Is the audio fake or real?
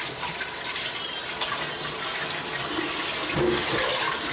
real